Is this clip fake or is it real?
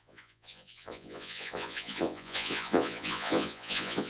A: fake